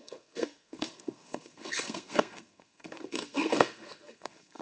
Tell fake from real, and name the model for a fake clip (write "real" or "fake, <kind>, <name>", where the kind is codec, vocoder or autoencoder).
fake, codec, SNAC